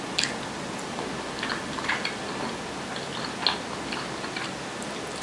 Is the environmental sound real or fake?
real